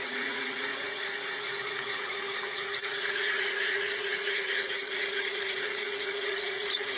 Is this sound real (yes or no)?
no